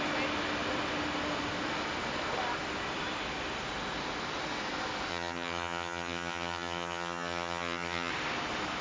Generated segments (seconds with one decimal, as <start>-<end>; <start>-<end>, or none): 5.1-8.1